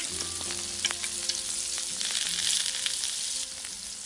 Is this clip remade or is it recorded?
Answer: recorded